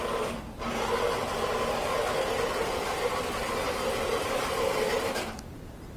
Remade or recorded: recorded